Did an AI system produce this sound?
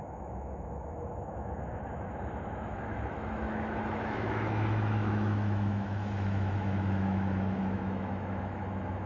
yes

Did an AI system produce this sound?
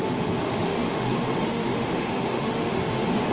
yes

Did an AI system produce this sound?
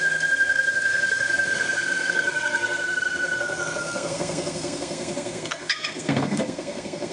yes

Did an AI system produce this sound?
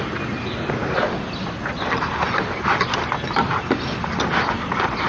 no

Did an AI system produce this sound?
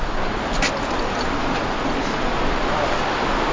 no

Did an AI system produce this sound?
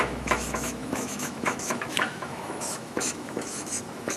yes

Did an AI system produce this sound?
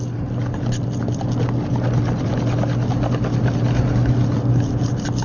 no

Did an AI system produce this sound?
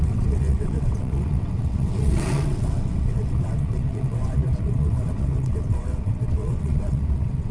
yes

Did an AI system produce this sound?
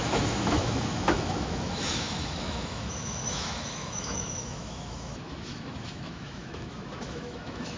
yes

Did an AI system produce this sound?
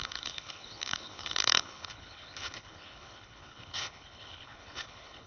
yes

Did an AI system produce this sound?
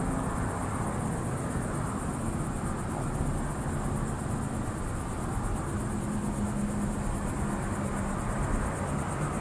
no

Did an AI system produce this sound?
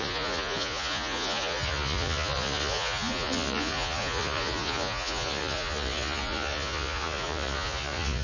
yes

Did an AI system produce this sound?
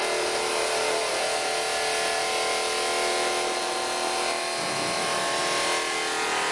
no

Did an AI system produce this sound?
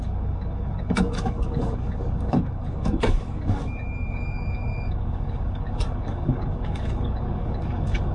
yes